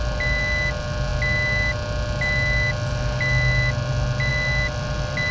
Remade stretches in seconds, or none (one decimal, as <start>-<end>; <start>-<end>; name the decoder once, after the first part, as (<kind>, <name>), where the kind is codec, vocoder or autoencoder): none